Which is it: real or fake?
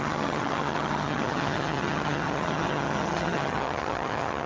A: fake